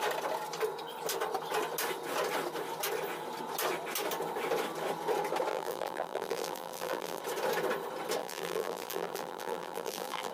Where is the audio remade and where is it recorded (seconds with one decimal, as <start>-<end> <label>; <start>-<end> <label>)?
0.0-5.5 recorded; 5.5-7.2 remade; 7.2-8.2 recorded; 8.2-10.3 remade